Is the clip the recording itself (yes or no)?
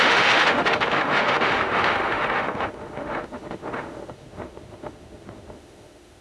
no